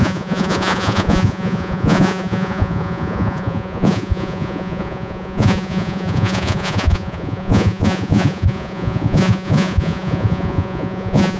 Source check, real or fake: fake